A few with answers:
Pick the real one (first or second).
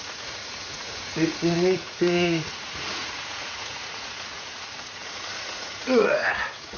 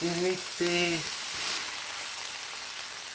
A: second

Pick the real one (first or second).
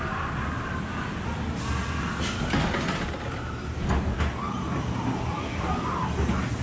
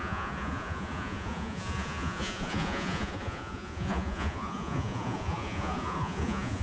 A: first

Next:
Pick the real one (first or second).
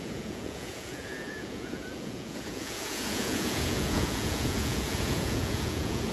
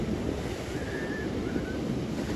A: second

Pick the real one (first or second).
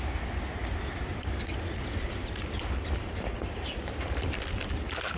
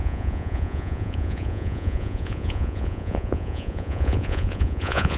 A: first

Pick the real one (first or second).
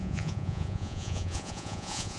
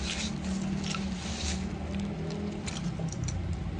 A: second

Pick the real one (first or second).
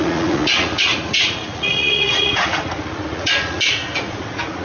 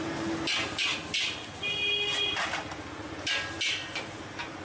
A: second